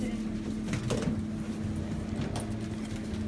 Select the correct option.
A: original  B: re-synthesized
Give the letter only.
A